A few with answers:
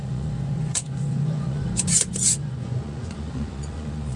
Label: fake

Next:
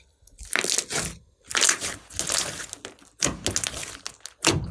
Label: real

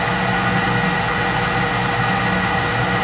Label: real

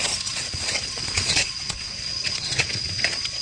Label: fake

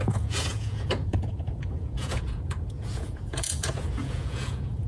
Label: fake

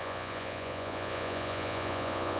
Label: fake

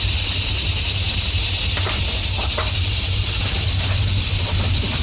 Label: real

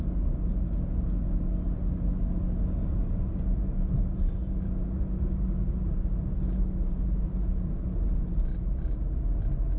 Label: real